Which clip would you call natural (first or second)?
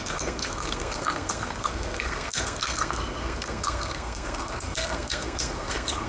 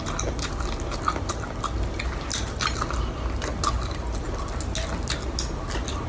second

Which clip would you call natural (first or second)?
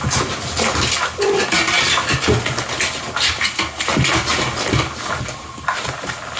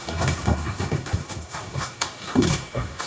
first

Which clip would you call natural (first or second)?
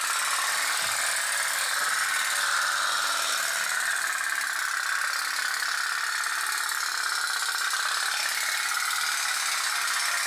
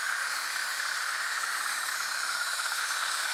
first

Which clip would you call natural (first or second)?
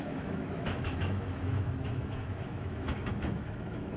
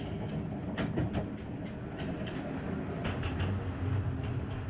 second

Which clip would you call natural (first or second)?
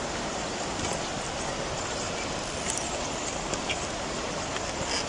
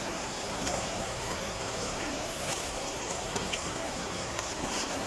first